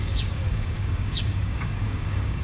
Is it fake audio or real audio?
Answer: fake